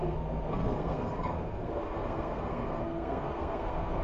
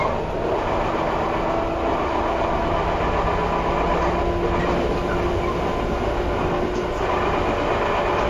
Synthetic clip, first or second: first